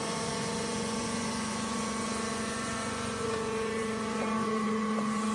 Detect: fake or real fake